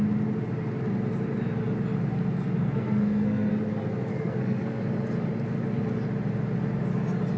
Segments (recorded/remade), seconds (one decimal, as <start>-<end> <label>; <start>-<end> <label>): 0.0-2.6 recorded; 2.6-3.5 remade; 3.5-4.1 recorded; 4.1-4.8 remade; 4.8-7.4 recorded